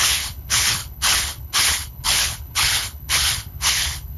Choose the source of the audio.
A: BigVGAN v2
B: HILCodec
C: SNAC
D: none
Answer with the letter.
B